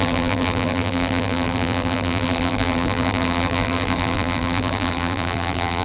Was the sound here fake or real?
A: fake